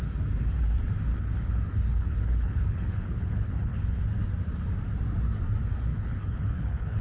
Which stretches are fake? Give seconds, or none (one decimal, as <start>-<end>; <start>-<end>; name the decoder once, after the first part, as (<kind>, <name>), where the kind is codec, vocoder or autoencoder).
1.1-4.0 (codec, HILCodec); 5.9-7.0